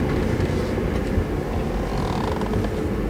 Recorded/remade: recorded